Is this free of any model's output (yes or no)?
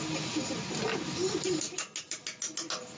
yes